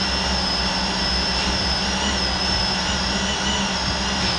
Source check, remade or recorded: recorded